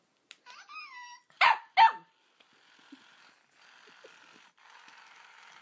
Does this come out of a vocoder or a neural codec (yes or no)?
no